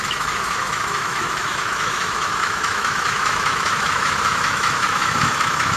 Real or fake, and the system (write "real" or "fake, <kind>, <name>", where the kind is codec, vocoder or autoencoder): fake, autoencoder, DAC-VAE